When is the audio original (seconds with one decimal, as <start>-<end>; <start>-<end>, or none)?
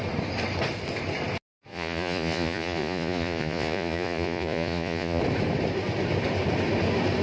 0.0-1.7; 5.2-7.2